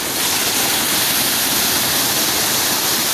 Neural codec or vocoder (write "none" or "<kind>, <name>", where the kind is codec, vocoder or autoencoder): none